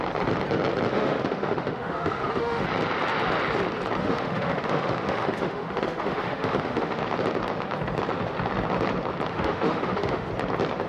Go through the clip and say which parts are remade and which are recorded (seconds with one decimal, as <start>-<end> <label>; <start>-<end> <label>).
0.0-0.9 recorded; 0.9-2.6 remade; 2.6-4.0 recorded; 4.0-7.0 remade; 7.0-9.3 recorded; 9.3-10.3 remade; 10.3-10.9 recorded